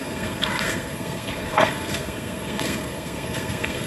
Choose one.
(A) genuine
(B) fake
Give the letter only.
B